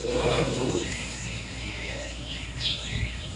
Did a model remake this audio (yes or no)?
yes